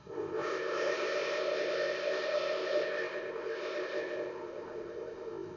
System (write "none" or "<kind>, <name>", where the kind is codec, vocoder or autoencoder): codec, ZipCodec